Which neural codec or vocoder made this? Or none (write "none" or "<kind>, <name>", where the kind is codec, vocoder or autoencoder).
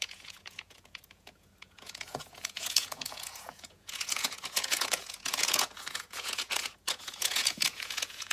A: vocoder, Vocos